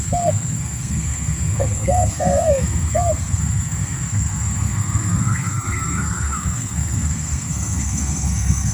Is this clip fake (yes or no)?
yes